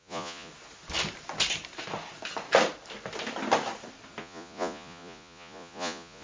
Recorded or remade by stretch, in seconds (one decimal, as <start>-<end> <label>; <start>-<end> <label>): 0.0-0.5 remade; 0.5-4.2 recorded; 4.2-6.2 remade